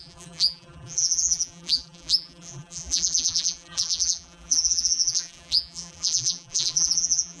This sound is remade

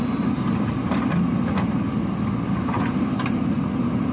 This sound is recorded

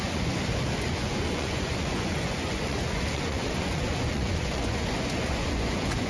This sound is remade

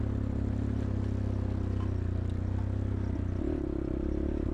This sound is recorded